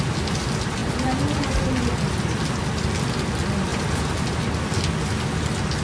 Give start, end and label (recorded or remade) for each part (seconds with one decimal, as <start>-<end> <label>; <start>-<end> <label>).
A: 0.0-3.7 recorded; 3.7-4.3 remade; 4.3-5.8 recorded

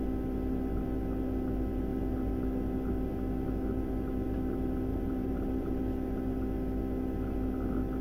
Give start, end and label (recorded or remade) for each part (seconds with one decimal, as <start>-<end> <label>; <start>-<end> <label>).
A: 0.0-4.9 recorded; 4.9-5.8 remade; 5.8-8.0 recorded

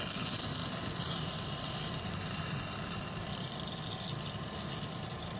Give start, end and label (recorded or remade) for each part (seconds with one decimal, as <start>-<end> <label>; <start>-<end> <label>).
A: 0.0-0.6 recorded; 0.6-3.8 remade; 3.8-5.4 recorded